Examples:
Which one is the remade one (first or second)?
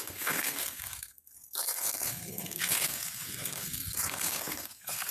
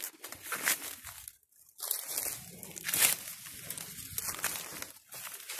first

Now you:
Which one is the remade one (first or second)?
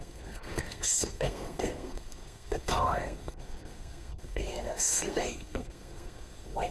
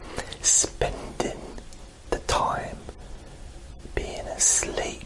first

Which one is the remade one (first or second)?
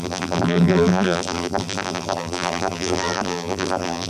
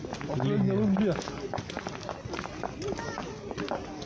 first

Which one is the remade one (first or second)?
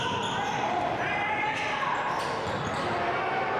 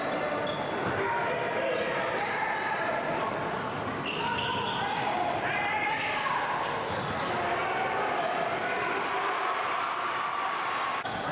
second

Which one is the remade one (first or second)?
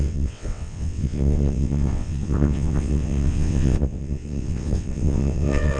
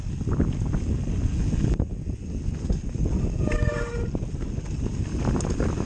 first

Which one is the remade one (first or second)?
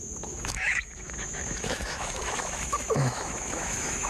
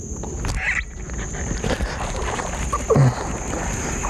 first